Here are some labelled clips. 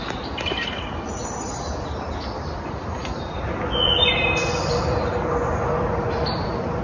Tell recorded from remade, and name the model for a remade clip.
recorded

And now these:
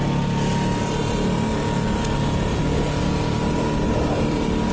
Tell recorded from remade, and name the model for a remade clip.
recorded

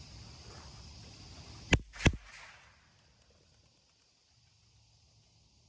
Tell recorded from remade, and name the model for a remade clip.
recorded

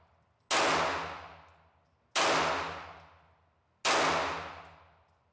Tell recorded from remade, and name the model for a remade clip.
recorded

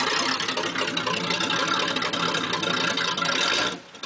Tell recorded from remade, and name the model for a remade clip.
recorded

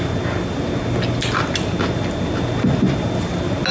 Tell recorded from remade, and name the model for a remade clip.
recorded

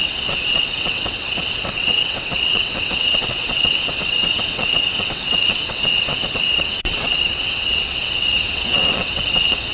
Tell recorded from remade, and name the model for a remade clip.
remade, vocoder, WaveNeXt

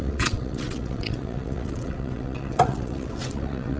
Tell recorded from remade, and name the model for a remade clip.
remade, vocoder, WaveNeXt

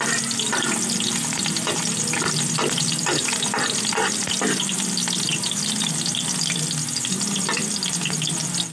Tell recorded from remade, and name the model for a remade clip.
recorded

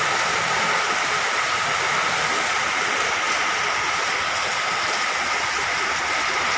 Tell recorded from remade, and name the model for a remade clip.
recorded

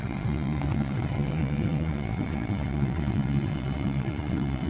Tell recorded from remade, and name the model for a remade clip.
remade, vocoder, WaveNeXt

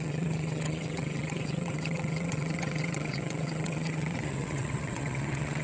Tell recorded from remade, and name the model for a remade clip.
remade, vocoder, WaveNeXt